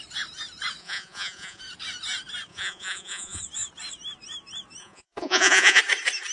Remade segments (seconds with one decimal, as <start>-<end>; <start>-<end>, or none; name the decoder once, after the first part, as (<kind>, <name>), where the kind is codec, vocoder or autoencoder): 0.8-1.6 (vocoder, Vocos); 2.5-3.4; 4.8-5.8